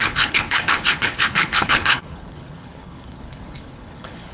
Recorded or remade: remade